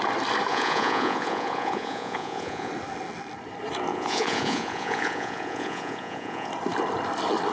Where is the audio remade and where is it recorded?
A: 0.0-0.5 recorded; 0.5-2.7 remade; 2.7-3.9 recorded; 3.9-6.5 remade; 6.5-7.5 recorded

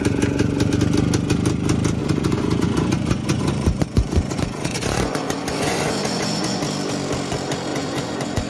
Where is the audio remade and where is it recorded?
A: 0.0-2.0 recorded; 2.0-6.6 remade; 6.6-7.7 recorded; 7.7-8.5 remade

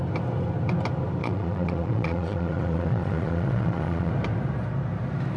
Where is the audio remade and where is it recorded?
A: 0.0-1.2 recorded; 1.2-4.1 remade; 4.1-5.4 recorded

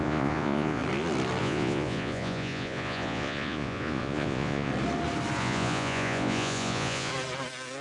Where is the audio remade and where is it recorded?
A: 0.0-0.8 remade; 0.8-1.4 recorded; 1.4-4.7 remade; 4.7-5.4 recorded; 5.4-7.1 remade; 7.1-7.8 recorded

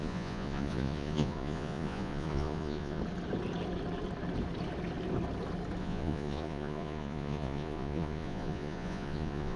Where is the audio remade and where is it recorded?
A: 0.0-3.0 remade; 3.0-5.8 recorded; 5.8-9.6 remade

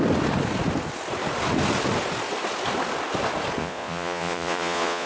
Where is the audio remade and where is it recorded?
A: 0.0-3.6 recorded; 3.6-5.1 remade